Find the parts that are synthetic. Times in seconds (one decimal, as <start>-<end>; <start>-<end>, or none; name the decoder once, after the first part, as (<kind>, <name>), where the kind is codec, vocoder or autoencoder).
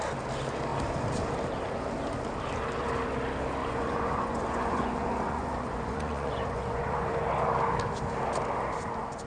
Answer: 3.6-7.1 (vocoder, Vocos)